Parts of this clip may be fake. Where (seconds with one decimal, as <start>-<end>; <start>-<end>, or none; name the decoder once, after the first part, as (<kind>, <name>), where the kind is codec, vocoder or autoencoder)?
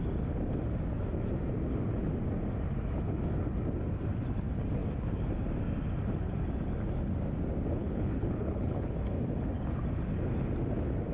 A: 7.8-8.9 (codec, HILCodec)